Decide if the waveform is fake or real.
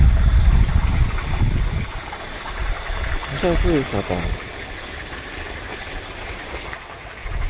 real